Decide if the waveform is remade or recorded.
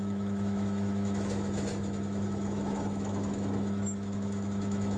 remade